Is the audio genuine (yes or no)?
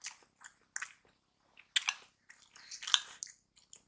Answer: yes